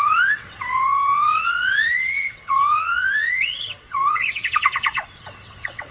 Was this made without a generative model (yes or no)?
no